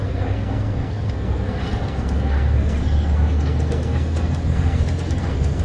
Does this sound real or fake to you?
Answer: fake